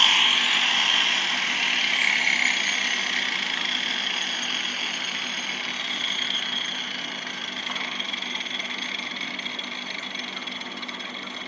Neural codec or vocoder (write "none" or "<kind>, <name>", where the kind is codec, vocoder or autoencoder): none